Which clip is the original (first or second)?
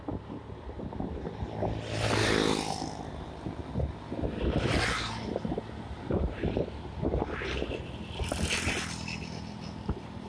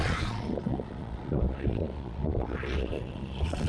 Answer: first